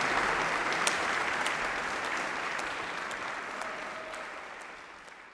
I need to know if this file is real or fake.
real